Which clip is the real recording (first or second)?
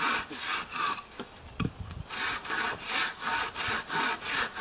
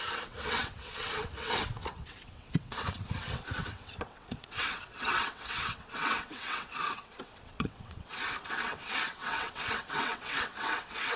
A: first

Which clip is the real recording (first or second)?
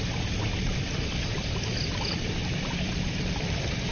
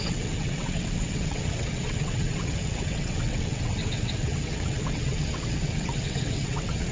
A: first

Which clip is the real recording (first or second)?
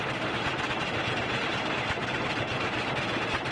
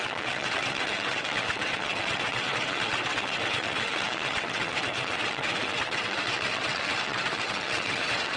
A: first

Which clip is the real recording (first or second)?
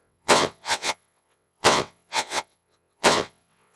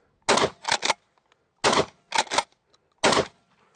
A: second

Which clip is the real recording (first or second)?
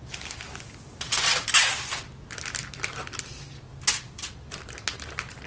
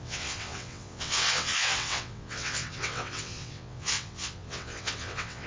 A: first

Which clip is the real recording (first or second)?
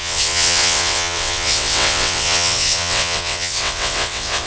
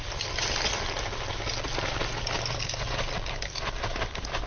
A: second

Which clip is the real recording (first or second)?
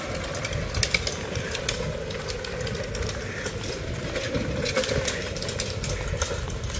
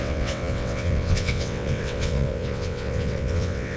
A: first